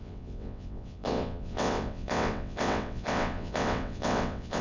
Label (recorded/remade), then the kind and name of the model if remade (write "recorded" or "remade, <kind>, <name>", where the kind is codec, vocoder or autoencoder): remade, vocoder, WaveNeXt